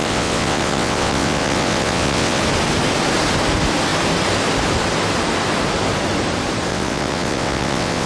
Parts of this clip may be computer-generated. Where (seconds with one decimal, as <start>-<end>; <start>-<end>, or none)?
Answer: 0.0-2.4; 6.7-8.1